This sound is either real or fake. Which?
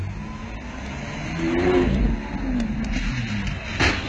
real